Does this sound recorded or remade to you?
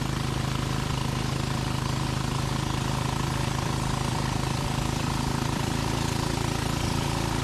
remade